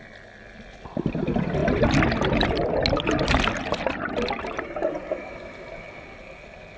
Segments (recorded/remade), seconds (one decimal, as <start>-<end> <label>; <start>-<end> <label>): 0.0-6.8 recorded